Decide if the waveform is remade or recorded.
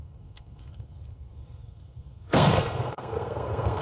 remade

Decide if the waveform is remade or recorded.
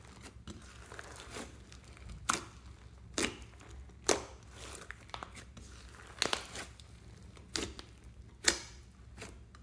recorded